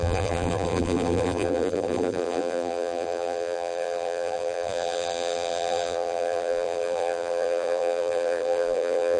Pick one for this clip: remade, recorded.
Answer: remade